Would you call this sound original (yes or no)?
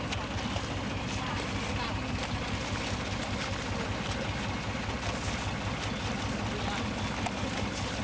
yes